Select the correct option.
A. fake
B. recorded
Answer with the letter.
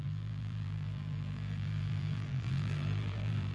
A